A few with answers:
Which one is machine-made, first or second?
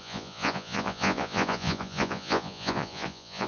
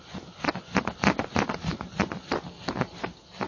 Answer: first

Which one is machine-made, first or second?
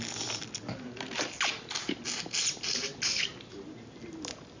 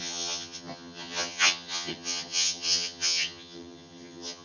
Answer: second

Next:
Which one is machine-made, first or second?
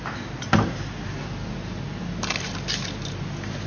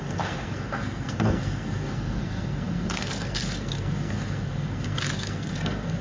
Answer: second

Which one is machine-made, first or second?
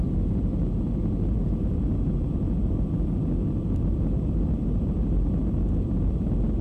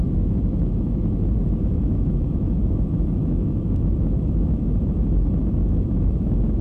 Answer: second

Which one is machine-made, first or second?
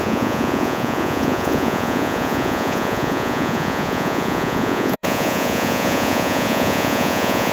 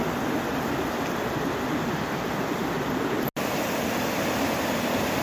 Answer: first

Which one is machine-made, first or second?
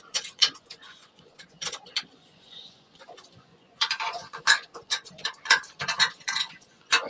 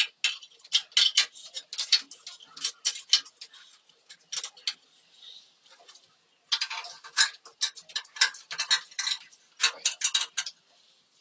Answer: first